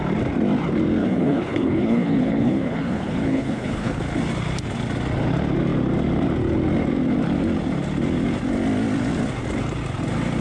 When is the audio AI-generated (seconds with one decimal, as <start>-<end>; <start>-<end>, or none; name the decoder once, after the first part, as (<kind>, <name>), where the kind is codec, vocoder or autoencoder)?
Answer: 1.0-4.0 (codec, HILCodec)